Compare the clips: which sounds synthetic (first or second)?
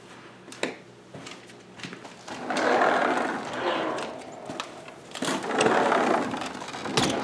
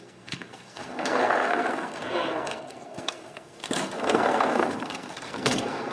second